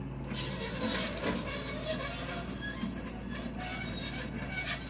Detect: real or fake real